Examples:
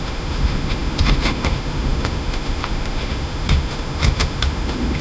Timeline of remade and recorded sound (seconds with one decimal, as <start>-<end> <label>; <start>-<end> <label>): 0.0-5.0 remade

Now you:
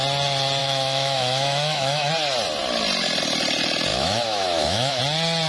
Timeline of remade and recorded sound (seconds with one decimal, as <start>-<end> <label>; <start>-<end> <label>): 0.0-0.6 recorded; 0.6-2.1 remade; 2.1-3.9 recorded; 3.9-5.0 remade; 5.0-5.5 recorded

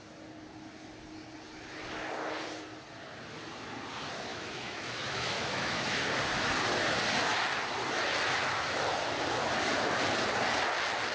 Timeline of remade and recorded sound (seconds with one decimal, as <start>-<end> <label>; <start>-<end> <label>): 0.0-4.3 recorded; 4.3-6.1 remade; 6.1-11.1 recorded